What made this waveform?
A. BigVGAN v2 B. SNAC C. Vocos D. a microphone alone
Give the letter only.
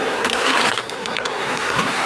B